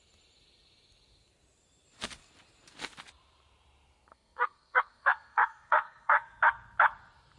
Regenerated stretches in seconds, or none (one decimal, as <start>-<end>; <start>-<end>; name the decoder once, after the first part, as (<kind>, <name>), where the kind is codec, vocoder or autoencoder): 4.1-6.4 (codec, SNAC)